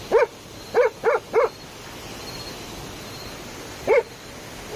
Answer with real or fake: real